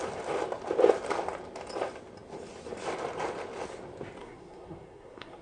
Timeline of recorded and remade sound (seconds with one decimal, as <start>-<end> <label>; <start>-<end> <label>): 0.0-4.2 recorded; 4.2-5.4 remade

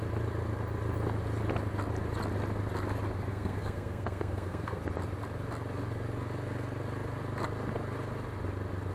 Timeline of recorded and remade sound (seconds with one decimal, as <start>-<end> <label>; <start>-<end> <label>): 0.0-3.3 recorded; 3.3-4.8 remade; 4.8-8.9 recorded

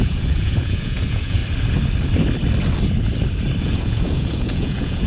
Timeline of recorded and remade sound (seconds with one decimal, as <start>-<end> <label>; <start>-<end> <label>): 0.0-1.4 remade; 1.4-3.6 recorded; 3.6-5.1 remade

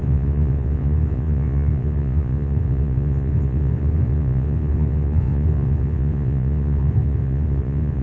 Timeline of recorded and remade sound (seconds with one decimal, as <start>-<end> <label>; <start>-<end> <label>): 0.0-8.0 remade